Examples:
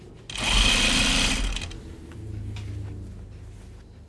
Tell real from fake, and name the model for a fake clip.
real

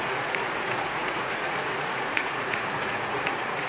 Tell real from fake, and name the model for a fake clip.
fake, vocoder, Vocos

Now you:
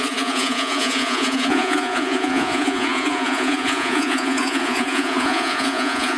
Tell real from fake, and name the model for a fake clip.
fake, vocoder, Vocos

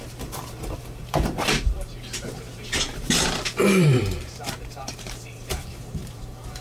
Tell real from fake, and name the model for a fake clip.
fake, vocoder, BigVGAN v2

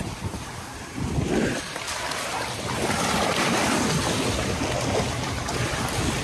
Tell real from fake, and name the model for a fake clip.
real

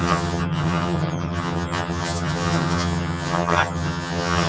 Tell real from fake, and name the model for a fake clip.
fake, vocoder, HiFi-GAN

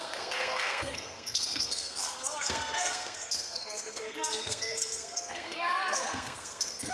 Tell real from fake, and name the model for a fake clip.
fake, codec, SNAC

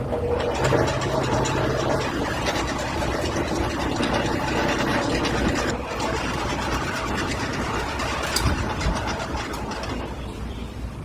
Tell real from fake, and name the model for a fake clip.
real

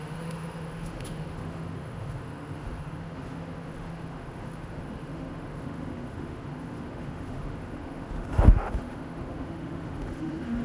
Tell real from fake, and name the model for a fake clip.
fake, autoencoder, DAC-VAE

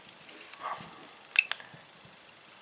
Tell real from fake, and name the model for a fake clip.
real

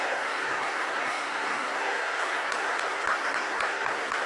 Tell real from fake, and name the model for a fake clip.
fake, codec, SNAC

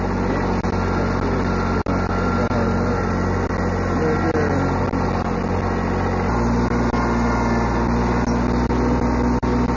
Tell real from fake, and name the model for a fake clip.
real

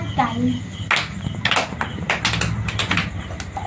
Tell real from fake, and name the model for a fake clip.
real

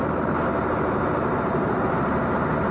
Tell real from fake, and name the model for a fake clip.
real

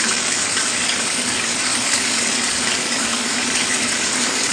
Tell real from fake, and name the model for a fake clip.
fake, codec, DAC